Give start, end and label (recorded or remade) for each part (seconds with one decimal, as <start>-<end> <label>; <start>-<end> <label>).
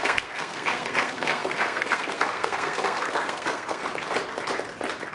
0.0-3.8 remade; 3.8-5.1 recorded